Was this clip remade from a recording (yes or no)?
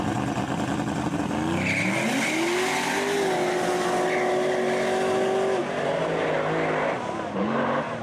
no